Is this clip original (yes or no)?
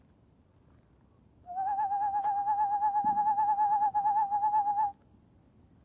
yes